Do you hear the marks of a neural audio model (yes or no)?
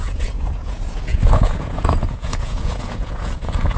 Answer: yes